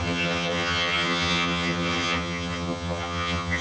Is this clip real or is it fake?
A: fake